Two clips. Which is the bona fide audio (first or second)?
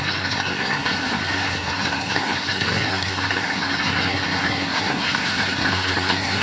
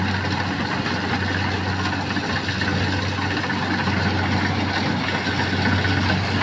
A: second